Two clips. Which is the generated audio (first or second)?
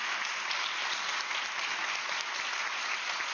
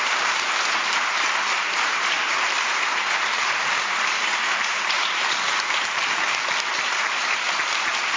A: second